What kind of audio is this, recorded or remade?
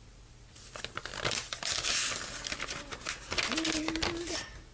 recorded